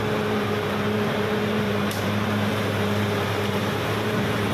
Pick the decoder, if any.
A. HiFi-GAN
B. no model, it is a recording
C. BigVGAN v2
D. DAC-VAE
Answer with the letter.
C